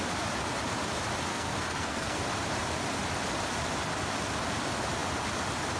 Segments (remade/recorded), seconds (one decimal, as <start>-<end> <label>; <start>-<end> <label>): 0.0-1.3 recorded; 1.3-2.2 remade; 2.2-5.8 recorded